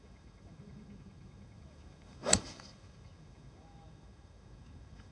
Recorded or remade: remade